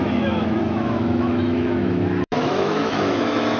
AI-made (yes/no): yes